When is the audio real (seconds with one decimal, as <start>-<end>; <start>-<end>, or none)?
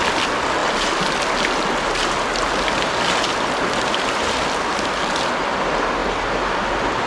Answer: 0.0-7.1